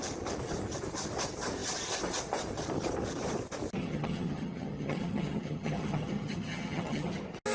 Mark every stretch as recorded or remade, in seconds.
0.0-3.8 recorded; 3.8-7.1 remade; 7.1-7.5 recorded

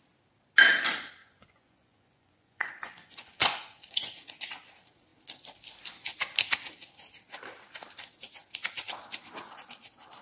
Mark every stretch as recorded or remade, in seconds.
0.0-1.2 recorded; 1.2-4.2 remade; 4.2-10.2 recorded

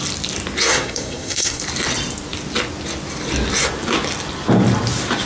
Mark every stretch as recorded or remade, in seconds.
0.0-0.7 recorded; 0.7-1.6 remade; 1.6-5.3 recorded

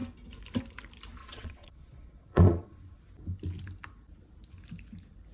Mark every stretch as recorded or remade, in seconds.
0.0-1.2 recorded; 1.2-3.0 remade; 3.0-5.3 recorded

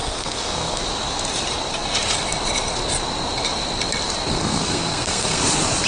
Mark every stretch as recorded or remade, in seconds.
0.0-0.8 remade; 0.8-4.3 recorded; 4.3-5.4 remade; 5.4-5.9 recorded